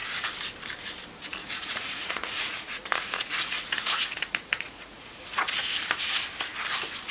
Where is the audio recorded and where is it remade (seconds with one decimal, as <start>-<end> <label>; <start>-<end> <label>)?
0.0-1.4 recorded; 1.4-5.7 remade; 5.7-7.1 recorded